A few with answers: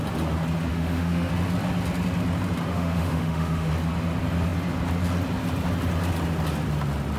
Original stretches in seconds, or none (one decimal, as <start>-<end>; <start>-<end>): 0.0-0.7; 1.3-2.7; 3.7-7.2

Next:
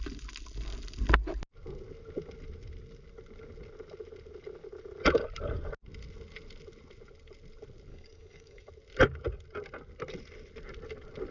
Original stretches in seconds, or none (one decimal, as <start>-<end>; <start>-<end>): 0.0-7.9; 8.7-11.3

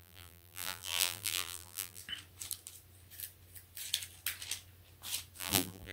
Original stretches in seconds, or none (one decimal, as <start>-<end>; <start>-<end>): 2.0-5.4

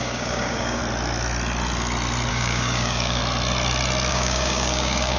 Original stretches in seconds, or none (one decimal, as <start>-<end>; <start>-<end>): 0.8-2.3; 3.2-4.1

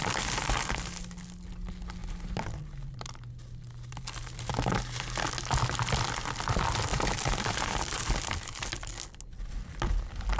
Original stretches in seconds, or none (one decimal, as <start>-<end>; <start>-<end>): 0.0-2.0; 4.8-6.9; 8.1-10.4